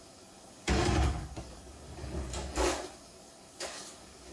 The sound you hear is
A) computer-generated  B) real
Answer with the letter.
A